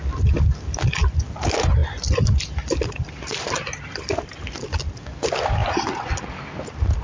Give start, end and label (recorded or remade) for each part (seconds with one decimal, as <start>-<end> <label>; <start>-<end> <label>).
0.0-1.8 recorded; 1.8-4.8 remade; 4.8-5.6 recorded; 5.6-6.3 remade; 6.3-7.0 recorded